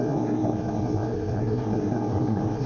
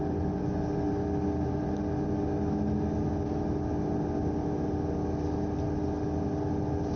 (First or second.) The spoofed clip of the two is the first